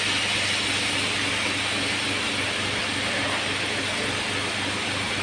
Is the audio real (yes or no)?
yes